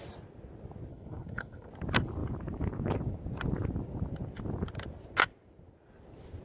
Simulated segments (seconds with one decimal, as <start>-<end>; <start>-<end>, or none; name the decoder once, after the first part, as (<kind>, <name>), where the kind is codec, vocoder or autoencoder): 0.9-1.7 (codec, SNAC)